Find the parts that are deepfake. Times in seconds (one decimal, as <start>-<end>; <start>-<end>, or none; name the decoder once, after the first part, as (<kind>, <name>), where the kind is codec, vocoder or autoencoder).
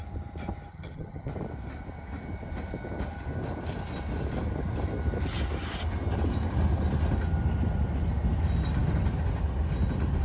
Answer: 0.7-1.3 (vocoder, HiFi-GAN)